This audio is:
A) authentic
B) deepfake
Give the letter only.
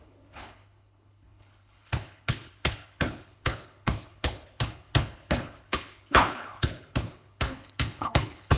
B